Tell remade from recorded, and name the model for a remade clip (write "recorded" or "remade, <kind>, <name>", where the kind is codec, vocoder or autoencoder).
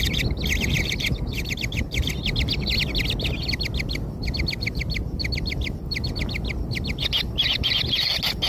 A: recorded